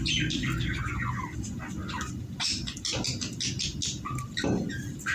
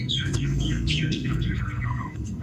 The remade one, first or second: second